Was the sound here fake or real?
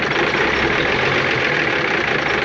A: real